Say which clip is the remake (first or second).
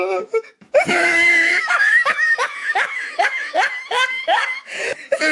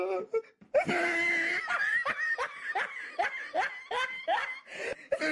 first